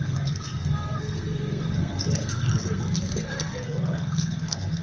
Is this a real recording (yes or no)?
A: no